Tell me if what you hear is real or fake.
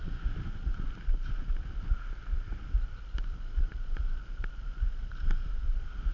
real